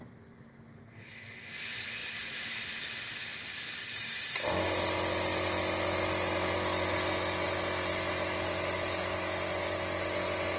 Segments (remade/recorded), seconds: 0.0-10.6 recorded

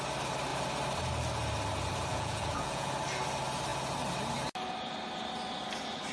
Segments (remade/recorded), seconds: 0.0-2.1 recorded; 2.1-2.9 remade; 2.9-6.1 recorded

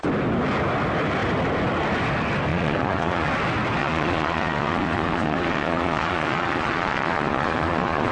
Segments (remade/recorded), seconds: 0.0-2.5 recorded; 2.5-3.3 remade; 3.3-3.8 recorded; 3.8-8.1 remade

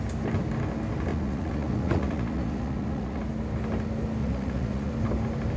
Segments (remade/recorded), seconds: 0.0-1.1 recorded; 1.1-3.2 remade; 3.2-4.2 recorded; 4.2-4.9 remade; 4.9-5.6 recorded

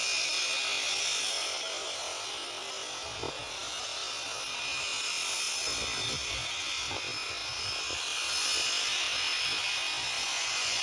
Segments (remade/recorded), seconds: 0.0-10.2 recorded; 10.2-10.8 remade